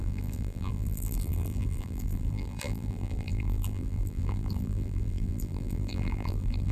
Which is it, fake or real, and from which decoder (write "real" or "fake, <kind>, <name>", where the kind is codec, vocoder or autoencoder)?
fake, vocoder, BigVGAN v2